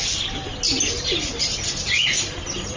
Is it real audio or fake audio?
real